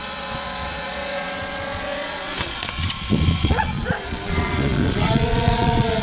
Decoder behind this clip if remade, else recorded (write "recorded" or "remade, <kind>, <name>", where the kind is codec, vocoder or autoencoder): remade, vocoder, Vocos